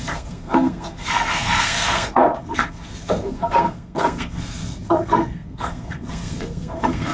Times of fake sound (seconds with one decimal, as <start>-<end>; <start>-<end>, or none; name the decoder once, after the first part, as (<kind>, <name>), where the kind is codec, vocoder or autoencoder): 0.0-7.1 (codec, SNAC)